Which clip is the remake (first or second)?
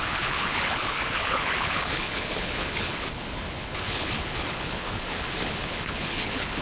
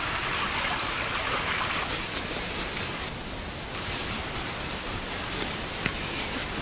first